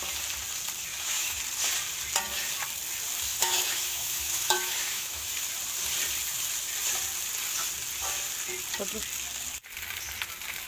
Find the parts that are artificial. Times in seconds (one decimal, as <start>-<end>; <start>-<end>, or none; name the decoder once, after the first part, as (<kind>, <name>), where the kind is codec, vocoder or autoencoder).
0.9-1.4 (autoencoder, DAC-VAE); 3.3-5.3